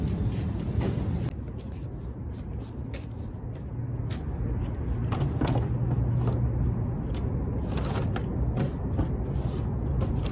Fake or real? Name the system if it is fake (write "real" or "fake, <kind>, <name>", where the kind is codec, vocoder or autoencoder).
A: real